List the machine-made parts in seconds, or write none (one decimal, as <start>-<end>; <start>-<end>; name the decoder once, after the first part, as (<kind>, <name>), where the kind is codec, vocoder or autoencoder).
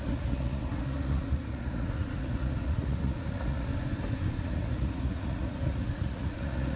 0.0-3.7 (vocoder, Vocos); 4.4-6.8